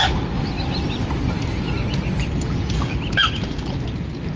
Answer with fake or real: real